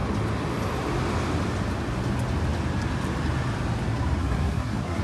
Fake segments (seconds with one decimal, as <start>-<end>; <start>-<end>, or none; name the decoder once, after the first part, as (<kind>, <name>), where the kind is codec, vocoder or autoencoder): 4.2-5.0 (codec, SNAC)